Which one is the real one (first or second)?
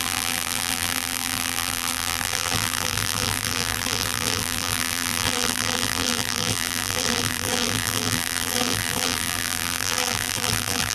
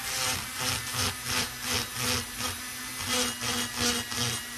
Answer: second